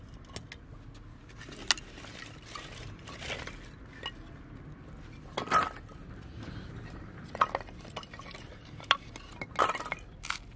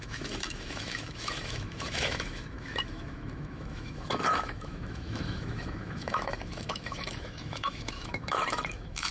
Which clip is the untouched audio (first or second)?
first